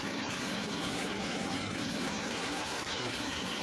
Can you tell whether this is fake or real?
fake